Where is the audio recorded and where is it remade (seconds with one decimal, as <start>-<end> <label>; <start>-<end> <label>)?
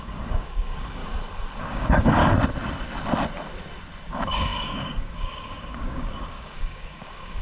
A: 0.0-1.0 remade; 1.0-1.7 recorded; 1.7-2.2 remade; 2.2-4.1 recorded; 4.1-7.4 remade